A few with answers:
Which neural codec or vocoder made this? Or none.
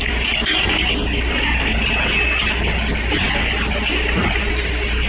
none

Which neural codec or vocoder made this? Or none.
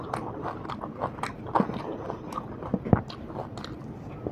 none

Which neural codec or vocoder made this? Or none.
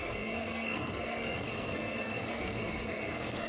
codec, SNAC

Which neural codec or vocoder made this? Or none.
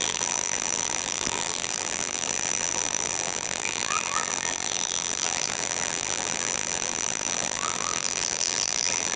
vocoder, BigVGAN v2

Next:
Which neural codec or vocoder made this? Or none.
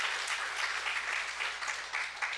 none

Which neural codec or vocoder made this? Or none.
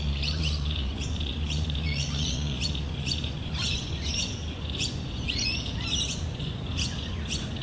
vocoder, Vocos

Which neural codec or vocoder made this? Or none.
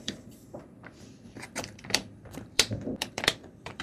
vocoder, BigVGAN v2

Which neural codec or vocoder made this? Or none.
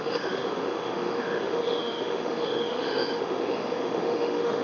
autoencoder, DAC-VAE